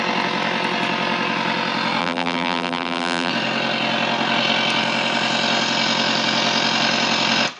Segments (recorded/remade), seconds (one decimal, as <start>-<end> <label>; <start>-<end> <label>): 0.0-2.0 recorded; 2.0-3.3 remade; 3.3-7.6 recorded